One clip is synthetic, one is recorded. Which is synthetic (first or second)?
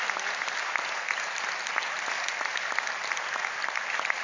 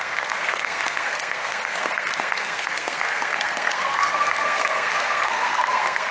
second